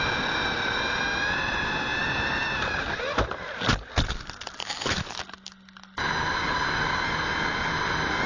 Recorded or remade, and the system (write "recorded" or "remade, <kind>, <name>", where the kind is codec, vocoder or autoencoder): recorded